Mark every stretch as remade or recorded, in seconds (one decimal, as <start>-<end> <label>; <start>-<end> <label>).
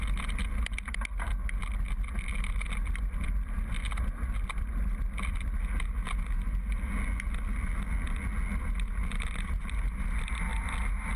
0.0-11.2 recorded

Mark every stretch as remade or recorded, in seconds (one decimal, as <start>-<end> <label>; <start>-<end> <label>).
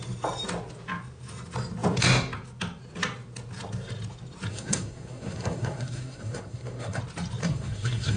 0.0-4.5 recorded; 4.5-7.0 remade; 7.0-7.4 recorded; 7.4-8.2 remade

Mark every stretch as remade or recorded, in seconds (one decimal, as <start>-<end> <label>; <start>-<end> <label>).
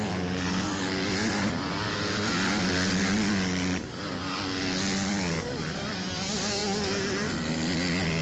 0.0-8.2 recorded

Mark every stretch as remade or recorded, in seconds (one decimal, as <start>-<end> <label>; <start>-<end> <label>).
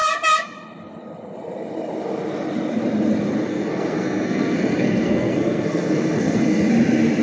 0.0-3.5 recorded; 3.5-6.7 remade; 6.7-7.2 recorded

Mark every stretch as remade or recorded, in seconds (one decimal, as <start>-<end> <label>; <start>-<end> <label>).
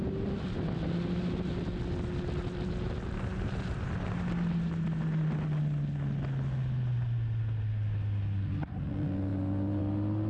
0.0-10.3 recorded